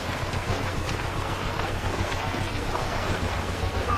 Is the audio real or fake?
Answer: fake